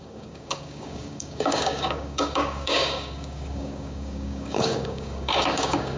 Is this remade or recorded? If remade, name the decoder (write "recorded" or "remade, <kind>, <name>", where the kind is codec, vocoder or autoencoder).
remade, codec, DAC